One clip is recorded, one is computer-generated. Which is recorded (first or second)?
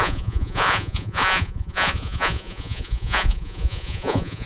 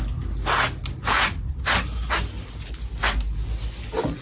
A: second